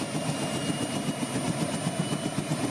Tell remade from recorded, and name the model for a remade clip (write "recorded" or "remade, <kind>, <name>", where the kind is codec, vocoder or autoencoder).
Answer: recorded